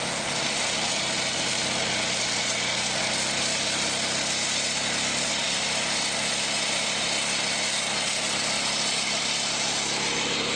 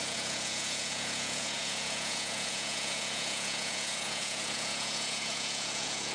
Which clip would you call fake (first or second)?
second